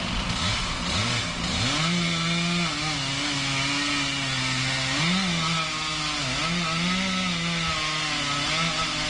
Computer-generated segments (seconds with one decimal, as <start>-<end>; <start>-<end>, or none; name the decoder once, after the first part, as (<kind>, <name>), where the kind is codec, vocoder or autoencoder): none